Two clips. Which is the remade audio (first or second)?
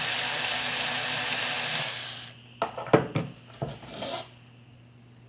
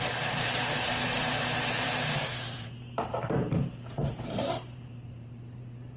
second